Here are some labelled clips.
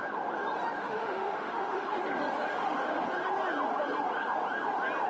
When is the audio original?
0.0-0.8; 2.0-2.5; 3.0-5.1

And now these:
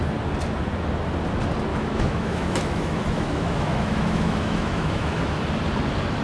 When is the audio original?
0.0-1.7; 5.4-6.2

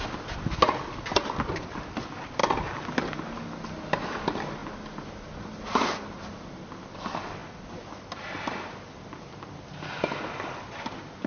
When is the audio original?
0.0-11.3